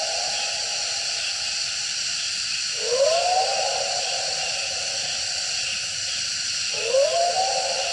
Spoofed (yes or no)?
yes